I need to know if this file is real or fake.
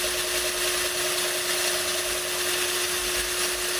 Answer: real